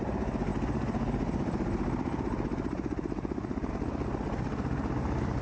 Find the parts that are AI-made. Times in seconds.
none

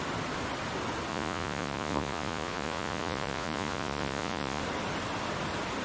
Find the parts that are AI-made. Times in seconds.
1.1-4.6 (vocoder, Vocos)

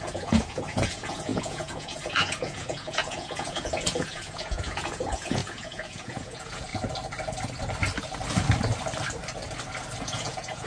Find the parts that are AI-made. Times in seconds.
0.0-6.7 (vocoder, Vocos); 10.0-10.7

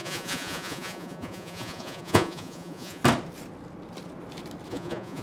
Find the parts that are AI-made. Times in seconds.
0.0-3.0 (vocoder, Vocos); 4.7-5.2

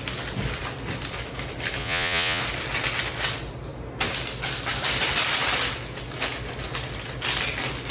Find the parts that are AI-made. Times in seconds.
1.8-2.4 (vocoder, Vocos)

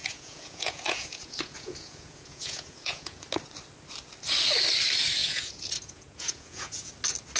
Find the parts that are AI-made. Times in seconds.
0.0-3.2 (vocoder, Vocos); 5.2-6.9